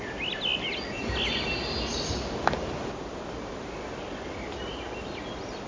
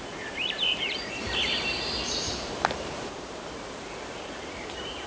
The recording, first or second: first